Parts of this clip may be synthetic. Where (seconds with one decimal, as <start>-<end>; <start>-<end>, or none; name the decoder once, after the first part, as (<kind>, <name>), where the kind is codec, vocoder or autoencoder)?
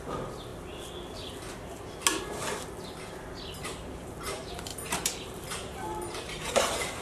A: 0.0-0.5 (vocoder, BigVGAN v2); 3.6-7.0